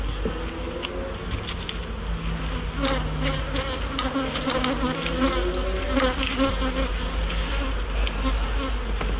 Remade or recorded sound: recorded